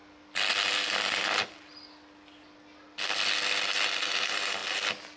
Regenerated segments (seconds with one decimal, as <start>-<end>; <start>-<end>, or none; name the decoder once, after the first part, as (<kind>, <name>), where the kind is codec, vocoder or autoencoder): none